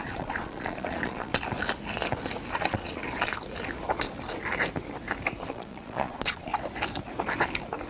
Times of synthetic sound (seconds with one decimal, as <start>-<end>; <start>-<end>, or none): 0.0-1.3; 2.5-3.0; 5.4-6.5